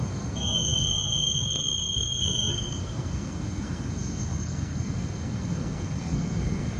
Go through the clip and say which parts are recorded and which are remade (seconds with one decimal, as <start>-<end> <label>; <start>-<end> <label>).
0.0-6.8 remade